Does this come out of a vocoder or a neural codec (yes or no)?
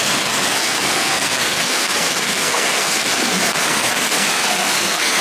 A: yes